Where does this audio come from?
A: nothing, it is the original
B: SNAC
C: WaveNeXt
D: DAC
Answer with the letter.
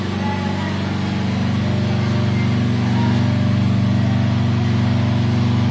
A